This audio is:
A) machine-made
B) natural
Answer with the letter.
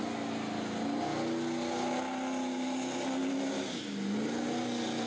B